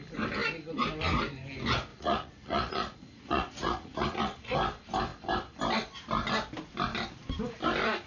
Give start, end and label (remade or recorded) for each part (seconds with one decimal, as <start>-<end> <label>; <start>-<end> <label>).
0.0-1.9 recorded; 1.9-4.4 remade; 4.4-8.1 recorded